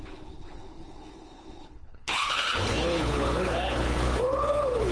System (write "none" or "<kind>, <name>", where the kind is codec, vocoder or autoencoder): codec, HILCodec